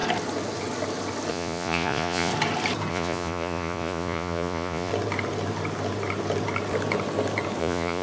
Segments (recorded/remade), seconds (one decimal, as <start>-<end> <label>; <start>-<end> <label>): 0.0-1.3 recorded; 1.3-2.3 remade; 2.3-2.9 recorded; 2.9-4.9 remade; 4.9-7.6 recorded; 7.6-8.0 remade